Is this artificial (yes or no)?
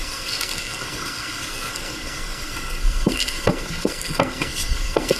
yes